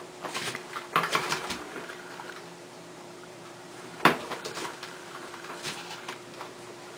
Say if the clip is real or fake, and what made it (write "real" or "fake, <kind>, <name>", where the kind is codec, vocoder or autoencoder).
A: fake, vocoder, BigVGAN v2